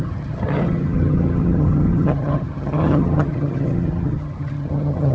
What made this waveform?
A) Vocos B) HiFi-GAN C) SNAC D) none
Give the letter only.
B